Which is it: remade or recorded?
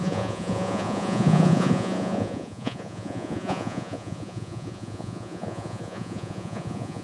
remade